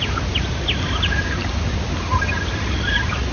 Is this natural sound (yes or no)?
yes